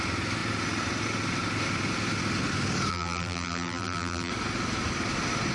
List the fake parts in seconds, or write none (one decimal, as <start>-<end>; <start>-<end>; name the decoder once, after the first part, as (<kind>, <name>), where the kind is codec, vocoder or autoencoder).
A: 2.9-4.3 (vocoder, BigVGAN v2)